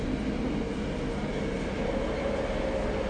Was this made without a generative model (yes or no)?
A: yes